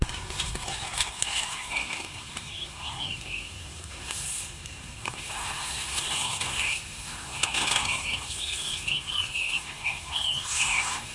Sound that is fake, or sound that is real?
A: fake